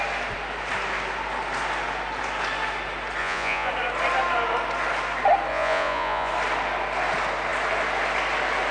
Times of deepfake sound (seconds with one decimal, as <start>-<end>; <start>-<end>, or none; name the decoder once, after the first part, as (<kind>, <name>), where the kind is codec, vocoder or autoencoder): 3.2-3.7 (vocoder, Vocos); 5.5-6.3